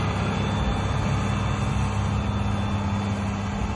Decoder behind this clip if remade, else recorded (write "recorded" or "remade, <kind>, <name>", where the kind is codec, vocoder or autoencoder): recorded